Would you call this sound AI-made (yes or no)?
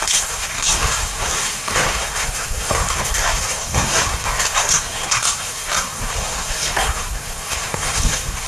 yes